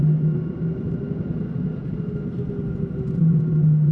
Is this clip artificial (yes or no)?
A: no